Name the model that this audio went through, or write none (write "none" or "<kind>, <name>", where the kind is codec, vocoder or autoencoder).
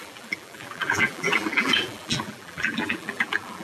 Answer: vocoder, BigVGAN v2